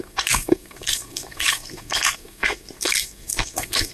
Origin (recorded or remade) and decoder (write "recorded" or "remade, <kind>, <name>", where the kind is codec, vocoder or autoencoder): remade, codec, SNAC